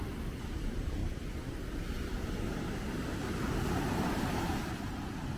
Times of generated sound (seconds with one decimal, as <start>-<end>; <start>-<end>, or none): none